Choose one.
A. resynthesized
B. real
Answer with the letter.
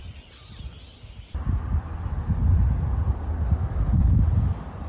B